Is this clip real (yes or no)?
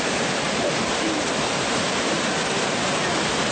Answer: yes